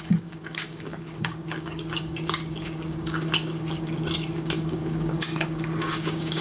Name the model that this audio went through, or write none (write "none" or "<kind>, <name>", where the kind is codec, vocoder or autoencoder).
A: codec, DAC